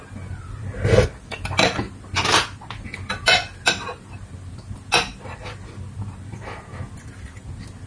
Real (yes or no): yes